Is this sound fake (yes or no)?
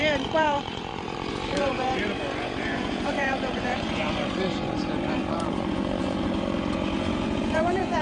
yes